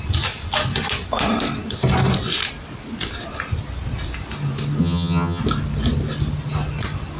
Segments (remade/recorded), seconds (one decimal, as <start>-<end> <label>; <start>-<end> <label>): 0.0-4.8 recorded; 4.8-5.4 remade; 5.4-7.2 recorded